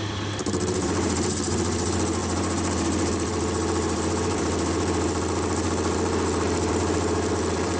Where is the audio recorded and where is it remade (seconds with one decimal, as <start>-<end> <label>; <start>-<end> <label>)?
0.0-7.8 remade